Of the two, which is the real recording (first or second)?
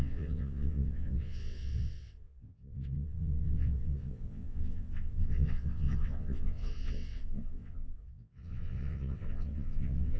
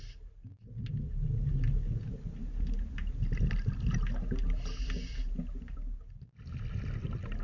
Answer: second